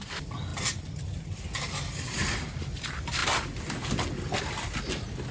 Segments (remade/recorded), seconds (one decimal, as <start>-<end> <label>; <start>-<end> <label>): 0.0-5.3 recorded